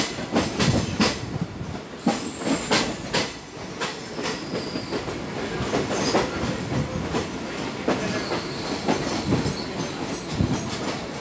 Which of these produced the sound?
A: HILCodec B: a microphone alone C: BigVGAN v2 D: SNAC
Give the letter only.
B